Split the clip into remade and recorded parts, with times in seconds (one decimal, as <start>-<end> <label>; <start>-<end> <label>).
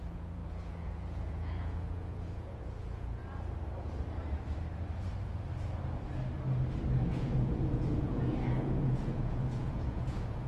0.0-3.2 remade; 3.2-7.1 recorded; 7.1-10.5 remade